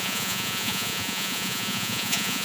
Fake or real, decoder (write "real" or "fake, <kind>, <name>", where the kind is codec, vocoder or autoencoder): fake, vocoder, Vocos